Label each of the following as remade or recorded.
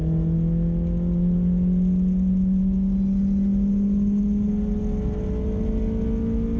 recorded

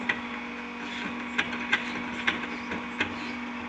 recorded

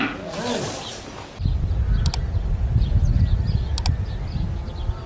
recorded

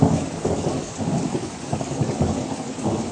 remade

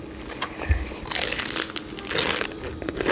recorded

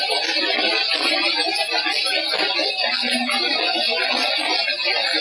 recorded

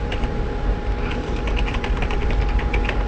recorded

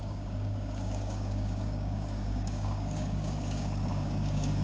remade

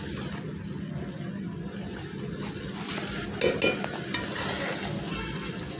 recorded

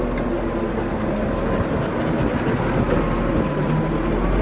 recorded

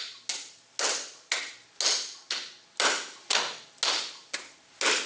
recorded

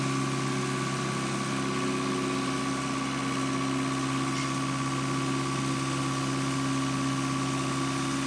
recorded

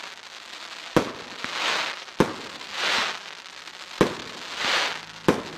recorded